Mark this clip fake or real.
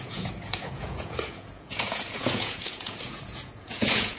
fake